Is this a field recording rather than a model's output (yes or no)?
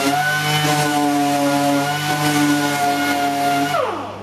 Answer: yes